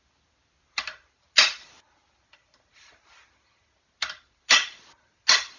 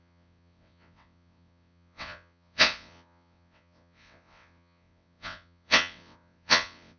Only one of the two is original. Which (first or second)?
first